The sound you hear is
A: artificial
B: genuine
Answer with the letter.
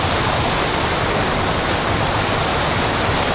B